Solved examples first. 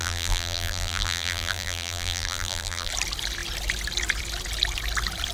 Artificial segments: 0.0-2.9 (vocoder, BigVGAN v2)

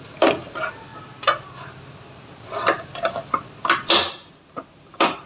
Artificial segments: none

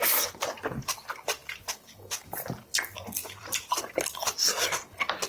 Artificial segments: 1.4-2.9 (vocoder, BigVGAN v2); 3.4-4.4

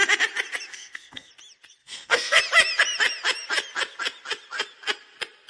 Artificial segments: 0.7-1.3 (codec, SNAC); 1.8-2.4

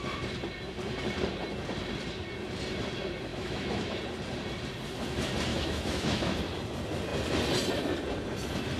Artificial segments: 3.3-4.0 (autoencoder, DAC-VAE); 5.5-6.4